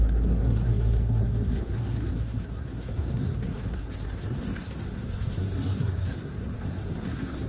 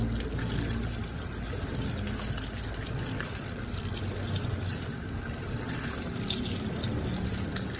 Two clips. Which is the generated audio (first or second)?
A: first